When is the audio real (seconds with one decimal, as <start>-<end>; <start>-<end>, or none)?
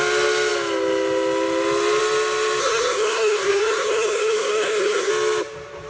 0.0-2.6; 5.1-5.9